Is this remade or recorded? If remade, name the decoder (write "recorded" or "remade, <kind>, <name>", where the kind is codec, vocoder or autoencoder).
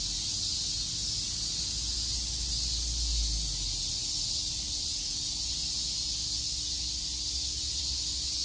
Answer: recorded